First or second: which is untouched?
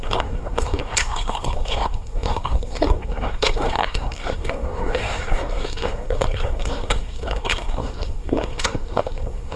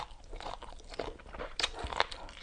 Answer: second